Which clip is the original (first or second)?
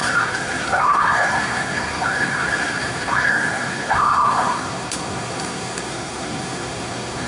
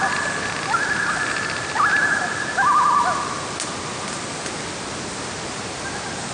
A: second